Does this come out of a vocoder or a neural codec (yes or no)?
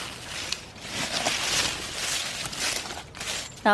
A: no